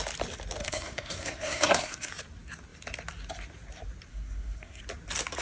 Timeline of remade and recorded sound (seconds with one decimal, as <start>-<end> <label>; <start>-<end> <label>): 0.0-0.6 recorded; 0.6-2.1 remade; 2.1-4.1 recorded; 4.1-4.8 remade; 4.8-5.4 recorded